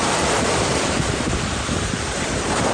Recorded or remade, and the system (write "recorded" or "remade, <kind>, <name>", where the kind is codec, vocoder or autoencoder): remade, vocoder, BigVGAN v2